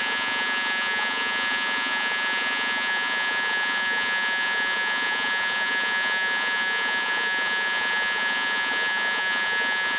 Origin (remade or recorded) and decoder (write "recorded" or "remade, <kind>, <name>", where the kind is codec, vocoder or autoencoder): remade, vocoder, Vocos